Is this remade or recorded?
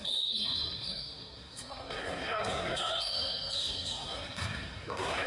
remade